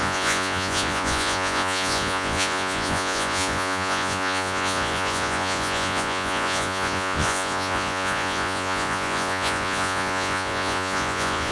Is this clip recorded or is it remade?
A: remade